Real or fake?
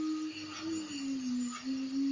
real